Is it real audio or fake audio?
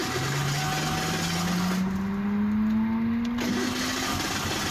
real